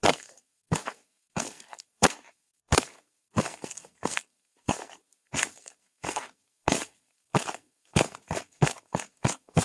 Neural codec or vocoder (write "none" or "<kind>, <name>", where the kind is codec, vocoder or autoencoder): codec, SNAC